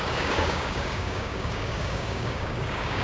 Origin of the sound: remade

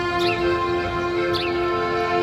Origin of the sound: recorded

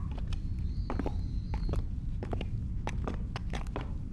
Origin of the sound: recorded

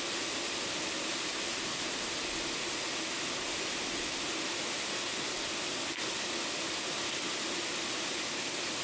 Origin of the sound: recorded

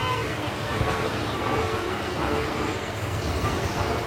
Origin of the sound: remade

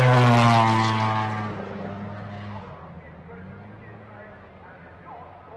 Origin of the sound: recorded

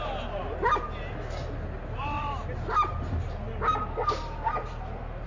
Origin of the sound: recorded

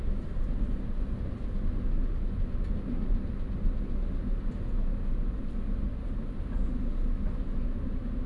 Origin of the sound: recorded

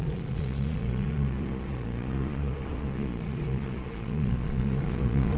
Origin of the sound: remade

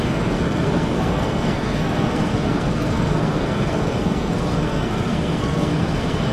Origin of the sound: remade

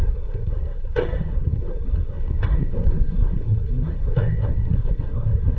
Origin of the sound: remade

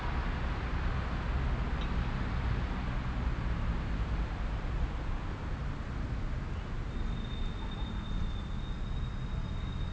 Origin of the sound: recorded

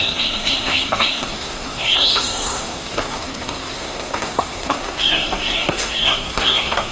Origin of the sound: remade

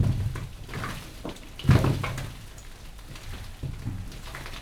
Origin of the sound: recorded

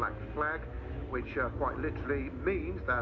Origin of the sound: recorded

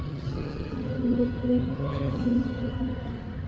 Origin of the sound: remade